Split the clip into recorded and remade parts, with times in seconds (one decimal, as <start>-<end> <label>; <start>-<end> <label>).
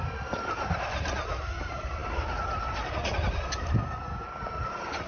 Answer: 0.0-5.1 recorded